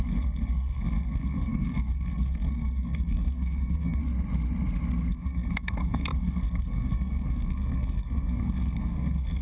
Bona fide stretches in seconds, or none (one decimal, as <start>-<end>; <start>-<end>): 4.0-5.1